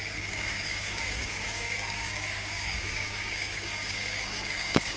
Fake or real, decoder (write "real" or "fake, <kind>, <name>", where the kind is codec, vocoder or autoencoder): fake, codec, DAC